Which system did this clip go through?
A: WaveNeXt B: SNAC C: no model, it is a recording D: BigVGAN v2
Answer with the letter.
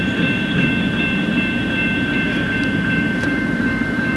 D